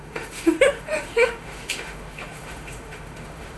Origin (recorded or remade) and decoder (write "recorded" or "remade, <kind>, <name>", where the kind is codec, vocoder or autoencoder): remade, autoencoder, DAC-VAE